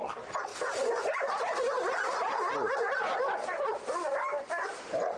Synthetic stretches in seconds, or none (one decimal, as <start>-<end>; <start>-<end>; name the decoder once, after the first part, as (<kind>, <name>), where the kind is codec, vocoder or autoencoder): none